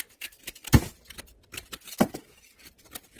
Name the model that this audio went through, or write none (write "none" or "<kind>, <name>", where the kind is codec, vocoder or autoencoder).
none